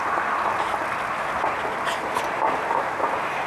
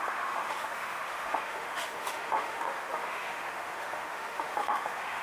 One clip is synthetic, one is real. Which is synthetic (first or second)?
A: second